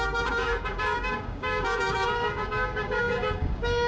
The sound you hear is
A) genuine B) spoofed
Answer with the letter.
B